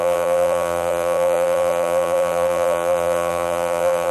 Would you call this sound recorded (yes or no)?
no